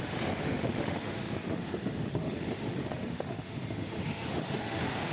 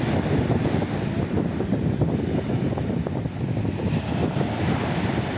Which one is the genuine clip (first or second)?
second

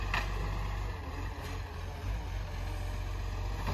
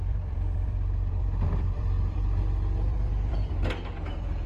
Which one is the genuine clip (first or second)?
first